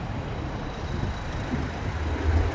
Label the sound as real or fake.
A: real